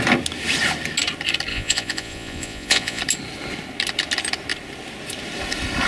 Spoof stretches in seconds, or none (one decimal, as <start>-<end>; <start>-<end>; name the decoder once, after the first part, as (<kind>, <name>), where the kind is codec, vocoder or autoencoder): 1.5-3.0 (vocoder, Vocos)